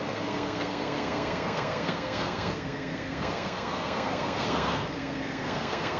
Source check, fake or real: fake